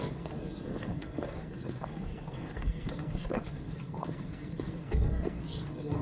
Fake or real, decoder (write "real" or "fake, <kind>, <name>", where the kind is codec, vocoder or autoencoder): fake, codec, SNAC